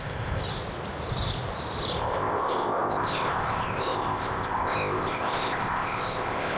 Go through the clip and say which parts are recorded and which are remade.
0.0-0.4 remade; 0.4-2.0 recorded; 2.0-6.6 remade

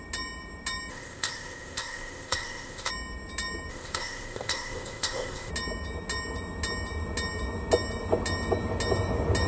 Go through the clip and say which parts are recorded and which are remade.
0.0-0.9 recorded; 0.9-2.9 remade; 2.9-3.7 recorded; 3.7-5.5 remade; 5.5-9.5 recorded

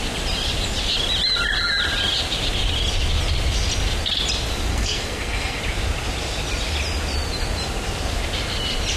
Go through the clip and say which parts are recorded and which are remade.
0.0-4.7 recorded; 4.7-5.6 remade; 5.6-9.0 recorded

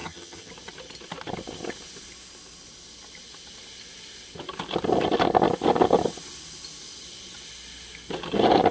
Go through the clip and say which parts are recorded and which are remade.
0.0-0.5 remade; 0.5-8.7 recorded

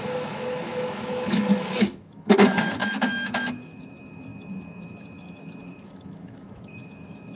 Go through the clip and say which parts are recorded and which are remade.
0.0-7.3 remade

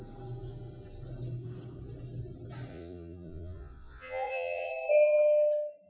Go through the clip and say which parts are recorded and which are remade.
0.0-2.7 recorded; 2.7-4.7 remade; 4.7-5.9 recorded